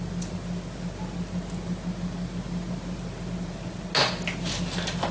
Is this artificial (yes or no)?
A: no